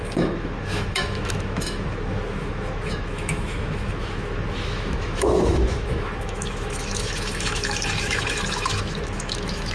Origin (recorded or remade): remade